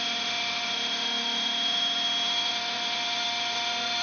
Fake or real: fake